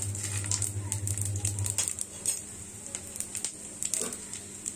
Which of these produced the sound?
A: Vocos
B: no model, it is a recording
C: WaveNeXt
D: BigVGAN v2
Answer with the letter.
B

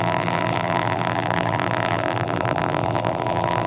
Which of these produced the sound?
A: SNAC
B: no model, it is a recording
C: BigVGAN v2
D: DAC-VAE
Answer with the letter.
C